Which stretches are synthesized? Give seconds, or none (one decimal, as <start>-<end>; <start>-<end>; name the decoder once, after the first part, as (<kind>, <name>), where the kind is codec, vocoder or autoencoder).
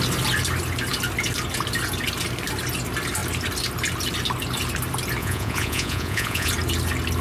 5.2-6.5 (vocoder, Vocos)